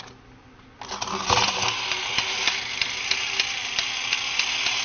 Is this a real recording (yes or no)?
yes